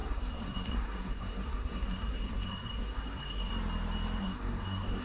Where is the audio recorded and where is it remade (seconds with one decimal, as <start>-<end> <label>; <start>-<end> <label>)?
0.0-3.5 remade; 3.5-4.2 recorded; 4.2-5.0 remade